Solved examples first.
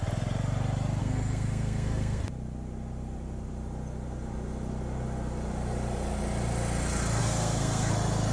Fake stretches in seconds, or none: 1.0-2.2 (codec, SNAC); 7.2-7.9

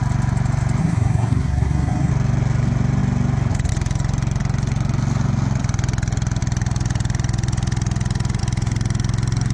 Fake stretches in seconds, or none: 0.8-2.1 (codec, SNAC)

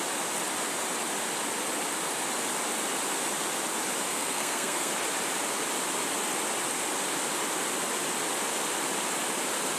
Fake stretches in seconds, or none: 4.1-4.9 (codec, SNAC)

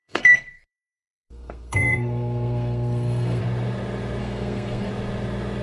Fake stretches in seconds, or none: 0.0-3.4 (codec, SNAC); 4.2-4.9

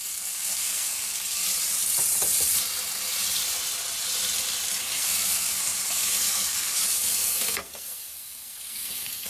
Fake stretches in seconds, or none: 0.0-1.4 (codec, SNAC); 4.8-9.3